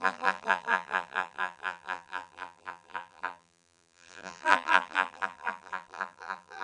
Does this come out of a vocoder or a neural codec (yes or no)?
yes